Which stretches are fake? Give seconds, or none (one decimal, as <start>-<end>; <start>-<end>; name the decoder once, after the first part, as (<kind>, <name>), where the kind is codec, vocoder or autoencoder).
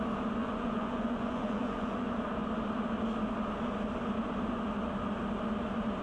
0.4-2.1 (vocoder, Vocos)